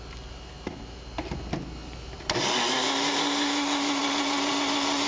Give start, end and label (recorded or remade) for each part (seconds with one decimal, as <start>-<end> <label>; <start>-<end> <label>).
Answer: 0.0-5.1 recorded